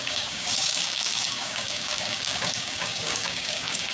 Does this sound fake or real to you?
fake